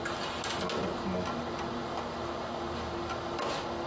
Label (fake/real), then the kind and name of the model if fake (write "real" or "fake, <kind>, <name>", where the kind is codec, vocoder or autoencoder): real